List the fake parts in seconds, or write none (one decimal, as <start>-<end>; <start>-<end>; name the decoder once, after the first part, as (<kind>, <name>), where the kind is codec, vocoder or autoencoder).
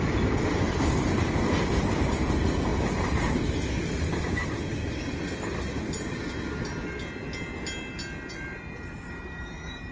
0.0-2.7 (vocoder, BigVGAN v2); 3.8-4.4; 8.3-9.9